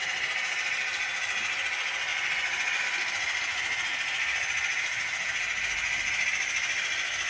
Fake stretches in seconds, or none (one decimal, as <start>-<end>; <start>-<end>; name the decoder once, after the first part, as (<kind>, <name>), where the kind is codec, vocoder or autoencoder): 2.1-2.8 (vocoder, Vocos)